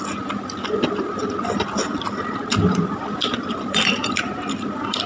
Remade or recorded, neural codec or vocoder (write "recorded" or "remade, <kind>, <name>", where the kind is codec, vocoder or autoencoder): remade, vocoder, BigVGAN v2